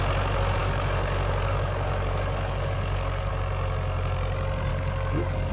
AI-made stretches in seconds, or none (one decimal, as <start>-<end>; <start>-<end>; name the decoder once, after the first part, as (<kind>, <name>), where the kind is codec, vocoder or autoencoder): 0.6-3.3 (codec, DAC); 4.7-5.5